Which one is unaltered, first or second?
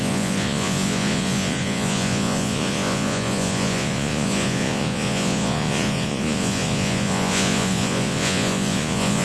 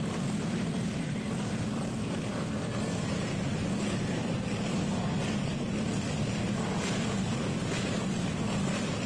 second